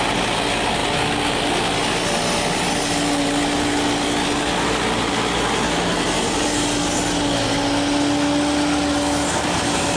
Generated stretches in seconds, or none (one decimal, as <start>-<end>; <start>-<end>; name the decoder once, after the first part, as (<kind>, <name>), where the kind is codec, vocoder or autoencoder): none